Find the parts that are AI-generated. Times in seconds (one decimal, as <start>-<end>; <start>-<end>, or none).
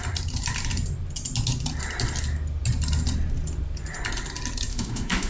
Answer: 4.7-5.3